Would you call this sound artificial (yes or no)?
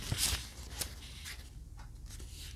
no